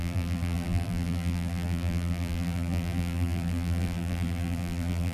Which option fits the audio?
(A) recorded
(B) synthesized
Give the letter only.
B